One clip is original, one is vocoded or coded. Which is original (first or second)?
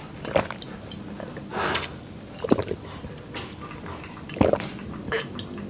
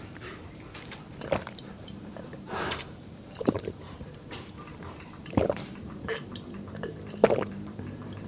first